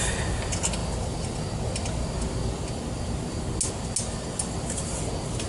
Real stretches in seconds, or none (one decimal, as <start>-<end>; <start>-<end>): 0.0-5.5